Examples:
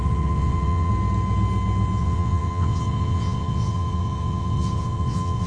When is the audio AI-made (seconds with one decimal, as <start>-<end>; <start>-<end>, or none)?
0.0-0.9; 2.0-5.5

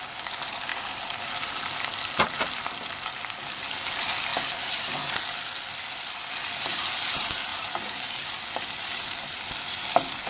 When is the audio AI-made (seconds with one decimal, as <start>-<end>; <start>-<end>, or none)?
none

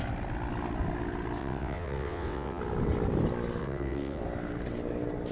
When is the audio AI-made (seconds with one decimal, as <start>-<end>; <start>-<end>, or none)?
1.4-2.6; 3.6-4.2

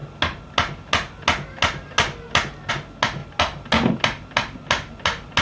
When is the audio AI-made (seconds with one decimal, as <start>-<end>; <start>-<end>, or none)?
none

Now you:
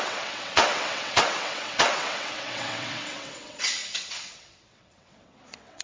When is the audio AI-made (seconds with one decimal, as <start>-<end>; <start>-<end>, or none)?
0.0-5.8

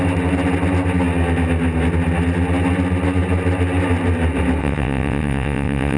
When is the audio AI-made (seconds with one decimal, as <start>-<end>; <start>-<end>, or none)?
4.6-6.0

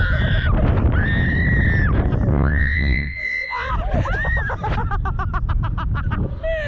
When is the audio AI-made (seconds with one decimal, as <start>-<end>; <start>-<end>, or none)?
2.3-3.7